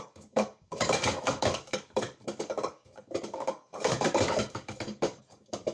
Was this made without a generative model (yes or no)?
no